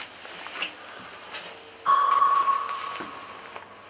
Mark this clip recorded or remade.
recorded